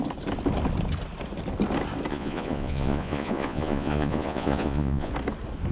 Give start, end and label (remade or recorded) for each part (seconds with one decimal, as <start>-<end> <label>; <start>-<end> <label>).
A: 0.0-2.1 recorded; 2.1-5.1 remade; 5.1-5.7 recorded